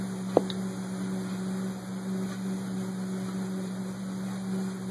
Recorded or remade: recorded